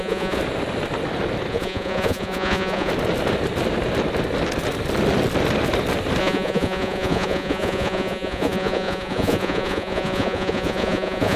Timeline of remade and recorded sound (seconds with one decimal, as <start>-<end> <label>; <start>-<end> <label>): 0.0-0.4 remade; 0.4-1.5 recorded; 1.5-2.9 remade; 2.9-6.2 recorded; 6.2-11.4 remade